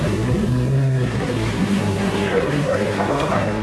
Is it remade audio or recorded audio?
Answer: remade